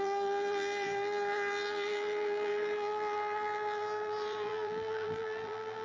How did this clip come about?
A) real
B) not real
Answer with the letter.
B